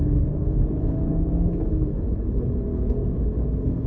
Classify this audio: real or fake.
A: fake